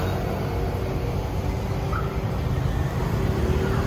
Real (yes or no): yes